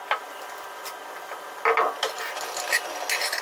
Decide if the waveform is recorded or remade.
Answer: recorded